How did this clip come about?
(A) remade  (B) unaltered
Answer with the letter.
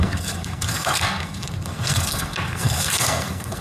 A